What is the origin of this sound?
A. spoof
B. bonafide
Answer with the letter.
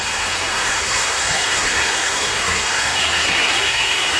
A